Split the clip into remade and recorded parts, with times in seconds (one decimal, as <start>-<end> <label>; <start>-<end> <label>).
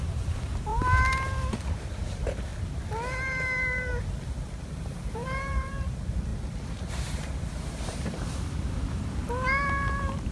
0.0-0.7 remade; 0.7-1.8 recorded; 1.8-2.5 remade; 2.5-4.8 recorded; 4.8-6.3 remade; 6.3-6.8 recorded; 6.8-10.3 remade